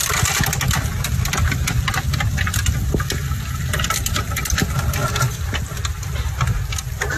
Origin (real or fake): real